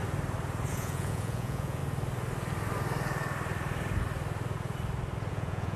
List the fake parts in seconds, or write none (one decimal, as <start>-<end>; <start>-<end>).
0.7-1.8; 5.3-5.8